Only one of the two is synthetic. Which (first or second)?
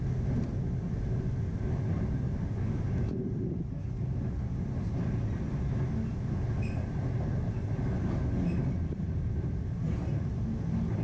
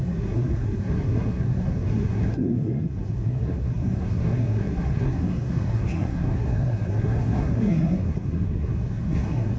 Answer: second